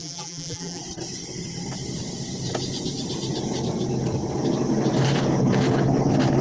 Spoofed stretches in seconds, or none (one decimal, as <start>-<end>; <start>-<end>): 0.0-0.8

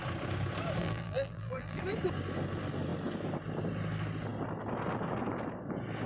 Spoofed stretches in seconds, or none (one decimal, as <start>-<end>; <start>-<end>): 0.8-1.8

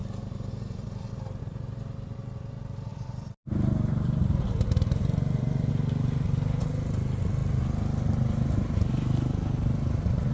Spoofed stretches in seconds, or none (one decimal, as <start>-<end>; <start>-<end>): 2.9-5.7

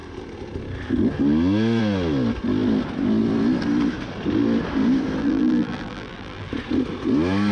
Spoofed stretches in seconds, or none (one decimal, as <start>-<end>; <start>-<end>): 5.2-6.5

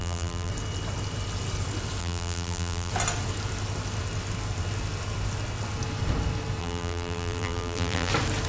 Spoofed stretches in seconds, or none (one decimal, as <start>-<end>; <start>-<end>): 0.0-0.5; 2.0-2.9; 6.6-8.1

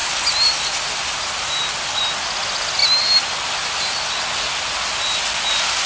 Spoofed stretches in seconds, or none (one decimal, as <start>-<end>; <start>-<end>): 0.0-2.0